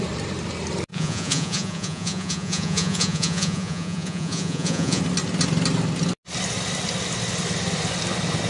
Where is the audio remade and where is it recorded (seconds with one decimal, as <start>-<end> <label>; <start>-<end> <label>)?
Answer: 0.0-0.9 recorded; 0.9-5.0 remade; 5.0-8.5 recorded

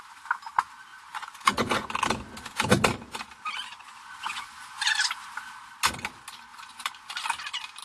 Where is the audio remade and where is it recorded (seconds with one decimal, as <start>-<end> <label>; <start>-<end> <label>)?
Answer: 0.0-0.9 recorded; 0.9-1.9 remade; 1.9-3.7 recorded; 3.7-5.0 remade; 5.0-6.5 recorded; 6.5-7.1 remade; 7.1-7.8 recorded

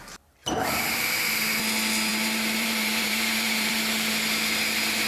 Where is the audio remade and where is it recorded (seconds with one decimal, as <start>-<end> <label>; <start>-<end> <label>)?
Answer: 0.0-0.4 recorded; 0.4-1.2 remade; 1.2-2.1 recorded; 2.1-4.1 remade; 4.1-5.1 recorded

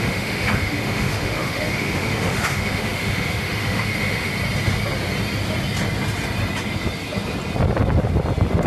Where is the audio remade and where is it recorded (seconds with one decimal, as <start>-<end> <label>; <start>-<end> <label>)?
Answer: 0.0-4.3 remade; 4.3-8.7 recorded

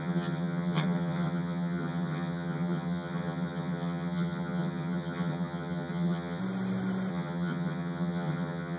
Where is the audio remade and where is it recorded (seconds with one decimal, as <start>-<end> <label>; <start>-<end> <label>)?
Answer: 0.0-6.4 remade; 6.4-7.1 recorded; 7.1-8.8 remade

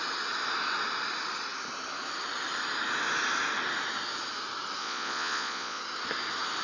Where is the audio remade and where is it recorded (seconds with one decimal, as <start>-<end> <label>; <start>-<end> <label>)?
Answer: 0.0-4.8 recorded; 4.8-5.8 remade; 5.8-6.6 recorded

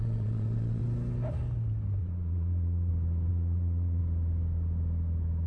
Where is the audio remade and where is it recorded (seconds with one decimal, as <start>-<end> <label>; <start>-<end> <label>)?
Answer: 0.0-0.8 remade; 0.8-2.0 recorded; 2.0-2.9 remade; 2.9-3.3 recorded; 3.3-4.0 remade; 4.0-5.5 recorded